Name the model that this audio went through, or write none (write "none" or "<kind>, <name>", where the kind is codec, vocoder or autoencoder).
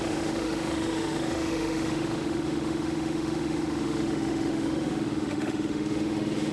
autoencoder, DAC-VAE